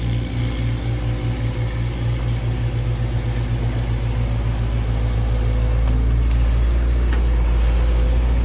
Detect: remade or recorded recorded